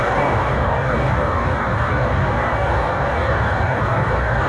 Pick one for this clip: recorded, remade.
remade